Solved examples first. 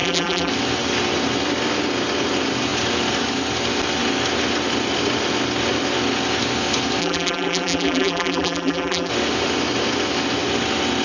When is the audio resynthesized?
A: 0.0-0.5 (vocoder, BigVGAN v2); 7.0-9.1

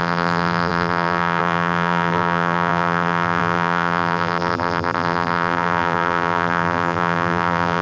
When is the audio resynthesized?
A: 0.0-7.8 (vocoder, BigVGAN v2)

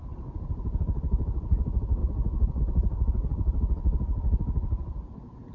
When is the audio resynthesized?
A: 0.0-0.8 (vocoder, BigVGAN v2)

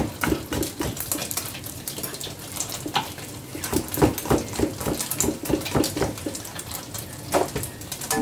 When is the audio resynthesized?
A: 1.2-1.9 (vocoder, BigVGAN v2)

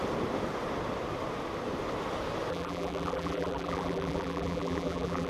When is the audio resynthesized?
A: 2.5-5.3 (vocoder, BigVGAN v2)

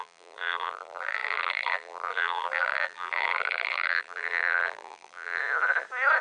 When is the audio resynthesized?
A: 0.0-5.4 (vocoder, BigVGAN v2)

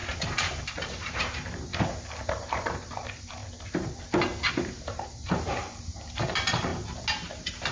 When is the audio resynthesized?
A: 0.0-1.7 (vocoder, BigVGAN v2); 2.3-3.4; 4.5-6.7